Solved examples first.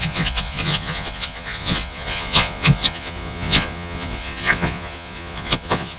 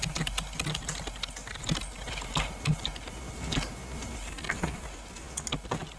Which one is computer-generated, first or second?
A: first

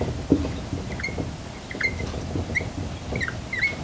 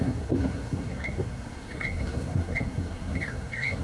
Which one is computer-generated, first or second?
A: second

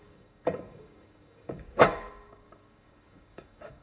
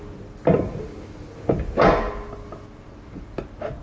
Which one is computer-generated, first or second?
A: first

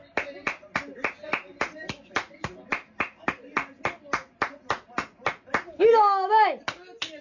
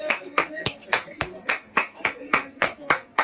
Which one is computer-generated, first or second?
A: second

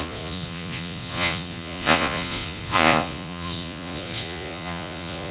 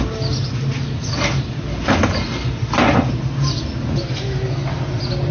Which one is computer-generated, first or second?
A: first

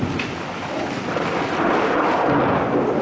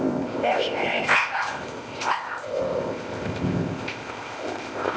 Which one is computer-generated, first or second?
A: second